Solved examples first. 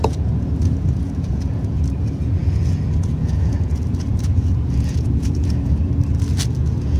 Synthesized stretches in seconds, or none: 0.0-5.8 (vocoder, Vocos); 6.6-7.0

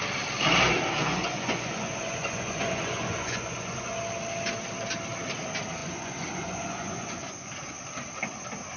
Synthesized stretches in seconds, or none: 1.0-4.0 (vocoder, Vocos); 5.8-7.5

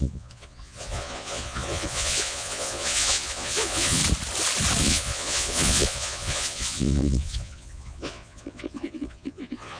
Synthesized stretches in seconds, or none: 0.0-4.0 (vocoder, Vocos); 4.8-9.8

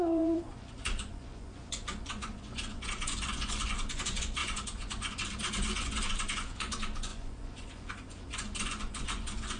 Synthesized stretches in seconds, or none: 0.0-9.6 (vocoder, Vocos)

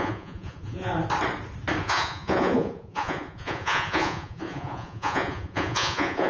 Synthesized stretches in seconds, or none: 0.0-0.9 (vocoder, Vocos); 1.8-6.3

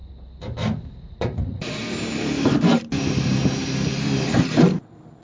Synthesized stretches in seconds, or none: 0.9-1.8 (vocoder, Vocos)